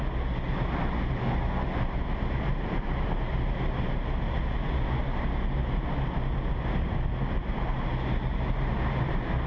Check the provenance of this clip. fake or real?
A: real